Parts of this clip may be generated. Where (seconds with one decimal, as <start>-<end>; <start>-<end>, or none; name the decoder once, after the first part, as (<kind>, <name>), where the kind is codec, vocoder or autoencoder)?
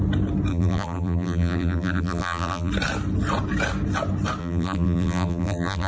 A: 0.5-2.7 (vocoder, BigVGAN v2); 4.4-5.9